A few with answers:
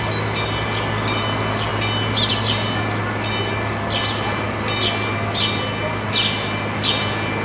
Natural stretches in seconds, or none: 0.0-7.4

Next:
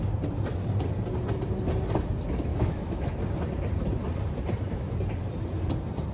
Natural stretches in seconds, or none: 0.0-2.5; 3.2-6.1

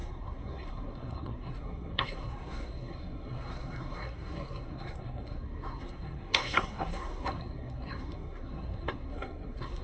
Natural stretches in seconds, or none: none

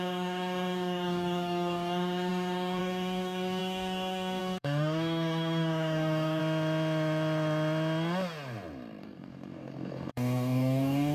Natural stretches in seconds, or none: 6.4-9.0